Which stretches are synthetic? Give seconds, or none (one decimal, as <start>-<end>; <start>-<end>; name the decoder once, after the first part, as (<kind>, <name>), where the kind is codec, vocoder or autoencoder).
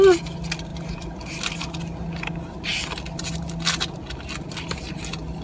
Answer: none